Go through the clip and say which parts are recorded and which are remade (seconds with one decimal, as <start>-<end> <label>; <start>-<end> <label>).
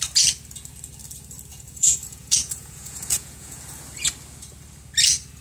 0.0-1.5 recorded; 1.5-3.6 remade; 3.6-5.4 recorded